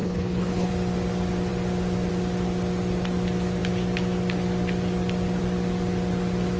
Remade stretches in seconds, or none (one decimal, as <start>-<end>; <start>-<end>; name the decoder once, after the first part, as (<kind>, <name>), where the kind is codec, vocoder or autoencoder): 0.0-0.7 (codec, HILCodec)